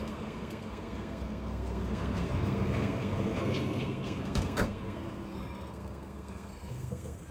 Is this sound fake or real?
fake